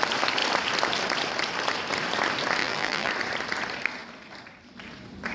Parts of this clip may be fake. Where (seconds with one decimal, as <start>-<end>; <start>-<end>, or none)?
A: 2.6-3.1